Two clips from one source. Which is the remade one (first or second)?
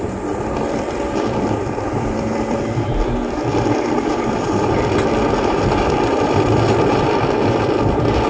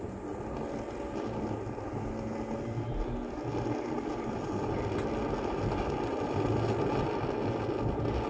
first